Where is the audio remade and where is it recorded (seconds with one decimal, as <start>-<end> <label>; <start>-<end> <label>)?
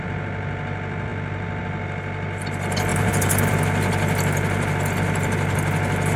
0.0-2.9 recorded; 2.9-3.5 remade; 3.5-6.2 recorded